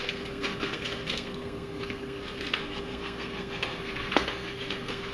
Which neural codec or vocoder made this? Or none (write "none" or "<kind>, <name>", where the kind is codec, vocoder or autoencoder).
codec, SNAC